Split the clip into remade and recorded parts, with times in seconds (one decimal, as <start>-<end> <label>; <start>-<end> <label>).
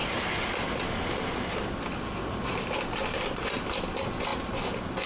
0.0-5.1 recorded